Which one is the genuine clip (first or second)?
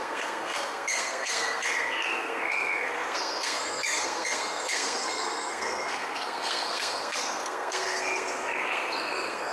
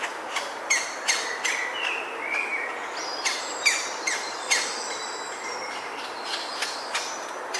second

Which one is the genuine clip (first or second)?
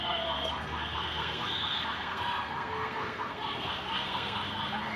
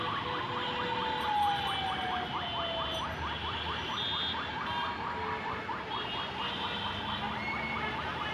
second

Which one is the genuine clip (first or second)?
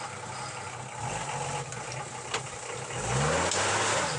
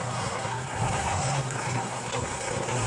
first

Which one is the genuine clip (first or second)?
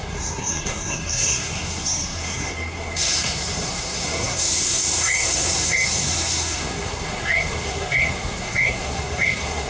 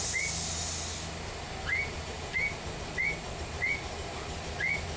second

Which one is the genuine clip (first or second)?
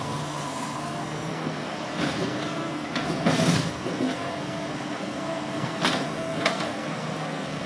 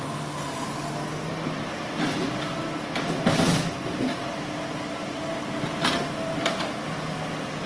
second